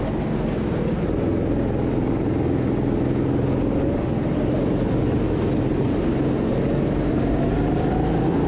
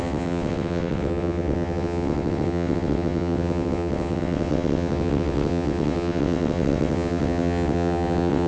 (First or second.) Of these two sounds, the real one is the first